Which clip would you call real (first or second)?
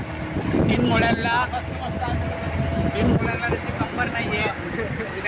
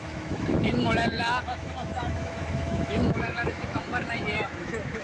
first